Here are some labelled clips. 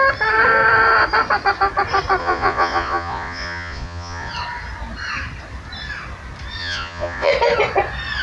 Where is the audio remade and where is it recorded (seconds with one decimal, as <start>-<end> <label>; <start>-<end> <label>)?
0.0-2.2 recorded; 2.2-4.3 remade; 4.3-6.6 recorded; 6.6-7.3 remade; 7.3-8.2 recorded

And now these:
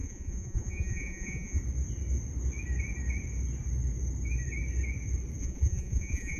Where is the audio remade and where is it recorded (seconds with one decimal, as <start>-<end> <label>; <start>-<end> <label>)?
0.0-1.6 remade; 1.6-5.4 recorded; 5.4-6.4 remade

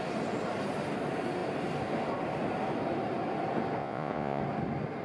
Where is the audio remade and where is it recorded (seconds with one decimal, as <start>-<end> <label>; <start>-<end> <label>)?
0.0-3.8 recorded; 3.8-4.4 remade; 4.4-5.0 recorded